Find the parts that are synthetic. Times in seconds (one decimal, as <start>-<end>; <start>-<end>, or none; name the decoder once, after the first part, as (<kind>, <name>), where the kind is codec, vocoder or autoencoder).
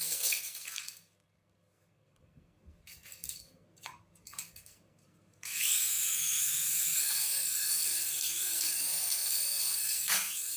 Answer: 0.0-10.6 (codec, SNAC)